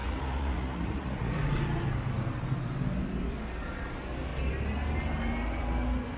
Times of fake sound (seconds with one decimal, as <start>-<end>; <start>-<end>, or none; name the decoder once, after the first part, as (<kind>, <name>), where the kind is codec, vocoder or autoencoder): 0.0-1.3 (vocoder, Vocos)